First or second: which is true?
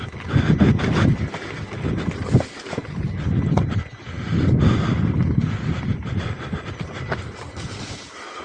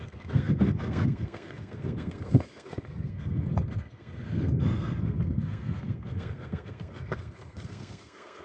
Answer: first